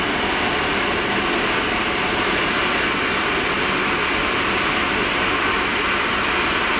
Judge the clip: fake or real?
real